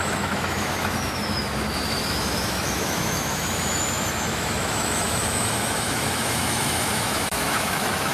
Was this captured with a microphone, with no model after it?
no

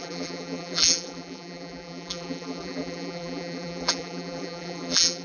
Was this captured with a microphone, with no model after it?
no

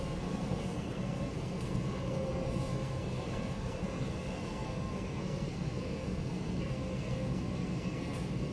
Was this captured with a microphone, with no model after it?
no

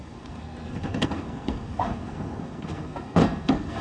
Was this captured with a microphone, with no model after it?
no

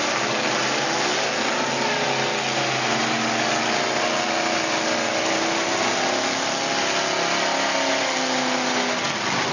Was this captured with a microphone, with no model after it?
yes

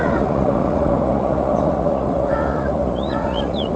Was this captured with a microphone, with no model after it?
no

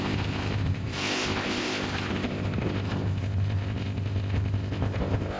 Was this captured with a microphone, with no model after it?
no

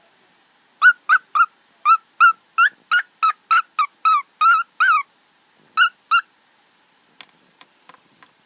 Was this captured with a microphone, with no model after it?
yes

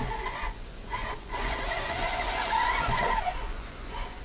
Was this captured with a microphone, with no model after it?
no